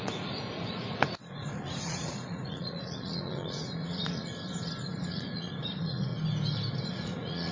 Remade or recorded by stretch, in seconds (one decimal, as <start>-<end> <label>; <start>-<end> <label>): 0.0-4.3 remade; 4.3-4.8 recorded; 4.8-6.1 remade; 6.1-6.9 recorded; 6.9-7.5 remade